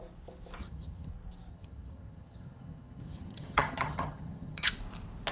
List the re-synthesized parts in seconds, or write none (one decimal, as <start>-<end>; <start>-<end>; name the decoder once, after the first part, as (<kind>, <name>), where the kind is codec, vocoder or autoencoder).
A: 0.6-1.1 (vocoder, HiFi-GAN); 1.5-4.7